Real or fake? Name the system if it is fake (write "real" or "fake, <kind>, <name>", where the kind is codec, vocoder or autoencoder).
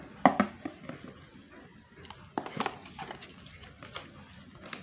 real